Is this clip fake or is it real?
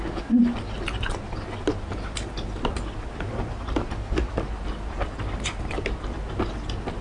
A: real